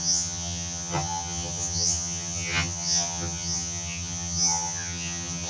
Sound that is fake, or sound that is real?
fake